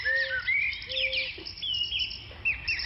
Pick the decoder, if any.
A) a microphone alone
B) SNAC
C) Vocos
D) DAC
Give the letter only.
A